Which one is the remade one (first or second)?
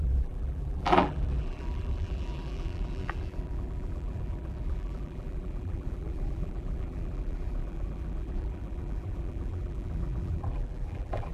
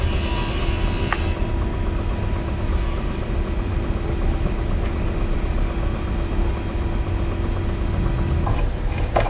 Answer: first